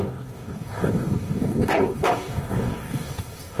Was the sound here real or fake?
fake